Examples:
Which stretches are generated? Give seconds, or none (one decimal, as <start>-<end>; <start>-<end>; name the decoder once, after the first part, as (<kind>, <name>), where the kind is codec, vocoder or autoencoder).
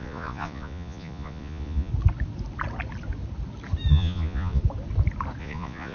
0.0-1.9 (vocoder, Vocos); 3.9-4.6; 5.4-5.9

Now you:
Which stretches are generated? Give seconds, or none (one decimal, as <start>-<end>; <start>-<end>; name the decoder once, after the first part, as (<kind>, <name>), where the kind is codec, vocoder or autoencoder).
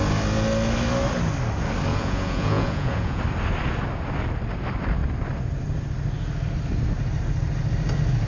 1.9-3.2 (vocoder, Vocos)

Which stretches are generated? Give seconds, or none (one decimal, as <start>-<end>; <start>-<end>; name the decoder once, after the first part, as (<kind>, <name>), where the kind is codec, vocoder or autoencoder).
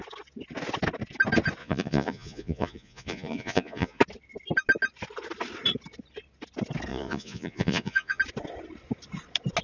1.6-4.0 (vocoder, Vocos); 6.9-8.2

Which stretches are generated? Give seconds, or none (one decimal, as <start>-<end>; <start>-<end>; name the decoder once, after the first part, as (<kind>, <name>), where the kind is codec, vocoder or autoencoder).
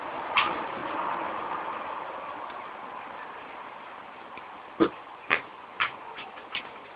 0.0-0.8 (vocoder, Vocos); 5.0-7.0